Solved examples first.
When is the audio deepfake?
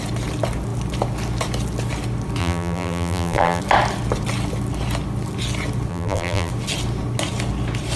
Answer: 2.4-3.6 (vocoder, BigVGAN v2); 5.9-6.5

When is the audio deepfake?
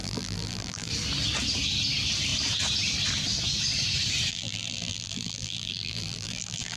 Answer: 0.0-0.9 (vocoder, BigVGAN v2); 4.3-6.8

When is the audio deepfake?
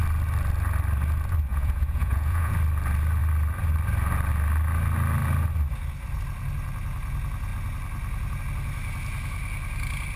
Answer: 1.5-2.5 (vocoder, Vocos)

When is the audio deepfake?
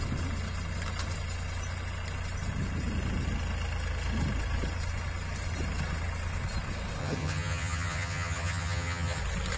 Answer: 7.0-9.2 (vocoder, HiFi-GAN)